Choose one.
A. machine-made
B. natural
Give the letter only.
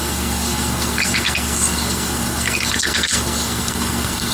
A